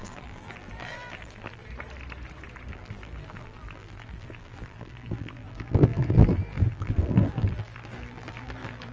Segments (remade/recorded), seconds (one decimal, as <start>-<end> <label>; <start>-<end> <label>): 0.0-1.6 remade; 1.6-2.7 recorded; 2.7-8.9 remade